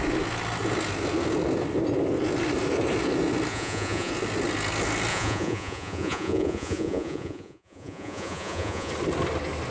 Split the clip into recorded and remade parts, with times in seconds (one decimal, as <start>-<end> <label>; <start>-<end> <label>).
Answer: 0.0-3.5 recorded; 3.5-4.1 remade; 4.1-5.1 recorded; 5.1-8.9 remade; 8.9-9.7 recorded